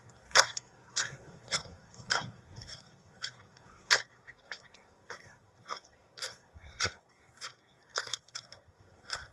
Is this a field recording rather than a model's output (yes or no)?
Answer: no